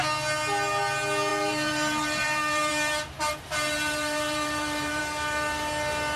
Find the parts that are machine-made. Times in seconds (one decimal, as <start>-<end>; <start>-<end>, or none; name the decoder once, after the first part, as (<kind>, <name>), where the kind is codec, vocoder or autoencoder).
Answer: 1.3-5.0 (vocoder, BigVGAN v2)

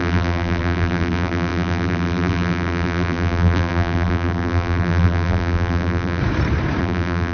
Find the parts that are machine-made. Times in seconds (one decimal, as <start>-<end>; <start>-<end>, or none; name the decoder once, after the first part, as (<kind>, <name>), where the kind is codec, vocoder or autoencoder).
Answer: 0.0-6.2 (vocoder, BigVGAN v2); 6.8-7.3